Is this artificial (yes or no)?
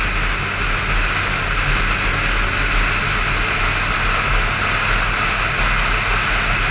no